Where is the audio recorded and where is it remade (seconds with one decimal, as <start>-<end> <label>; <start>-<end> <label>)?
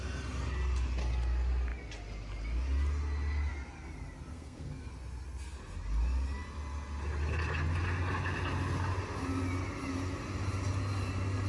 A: 0.0-4.3 recorded; 4.3-4.9 remade; 4.9-11.5 recorded